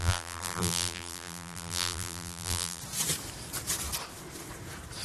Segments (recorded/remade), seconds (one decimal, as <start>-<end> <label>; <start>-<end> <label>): 0.0-2.8 remade; 2.8-5.0 recorded